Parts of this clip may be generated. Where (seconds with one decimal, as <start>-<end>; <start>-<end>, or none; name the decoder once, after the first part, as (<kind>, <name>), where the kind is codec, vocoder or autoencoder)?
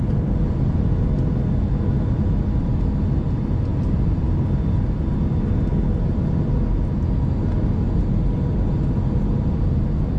none